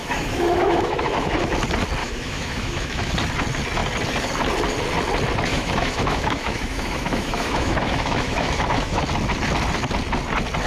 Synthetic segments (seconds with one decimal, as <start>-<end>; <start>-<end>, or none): 0.0-1.5; 2.0-3.1; 5.5-9.0